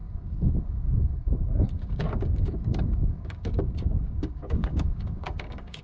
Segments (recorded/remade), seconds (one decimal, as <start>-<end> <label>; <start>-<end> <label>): 0.0-5.8 remade